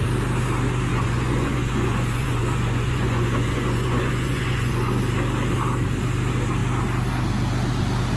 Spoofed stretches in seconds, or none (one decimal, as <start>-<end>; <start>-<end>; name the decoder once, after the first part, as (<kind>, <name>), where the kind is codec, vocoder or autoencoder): 0.9-4.9 (vocoder, Vocos)